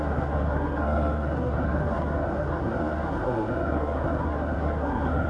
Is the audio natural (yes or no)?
no